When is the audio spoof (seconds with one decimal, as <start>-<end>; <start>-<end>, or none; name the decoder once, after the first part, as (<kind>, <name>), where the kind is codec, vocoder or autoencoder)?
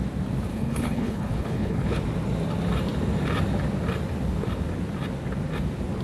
0.5-2.0 (codec, HILCodec)